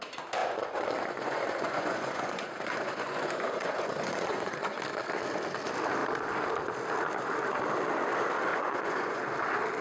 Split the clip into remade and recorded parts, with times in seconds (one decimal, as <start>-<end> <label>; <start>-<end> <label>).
0.0-0.4 recorded; 0.4-4.8 remade; 4.8-8.5 recorded; 8.5-9.2 remade; 9.2-9.8 recorded